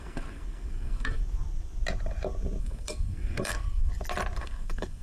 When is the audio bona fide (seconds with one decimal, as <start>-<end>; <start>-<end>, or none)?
1.2-2.6; 3.9-4.4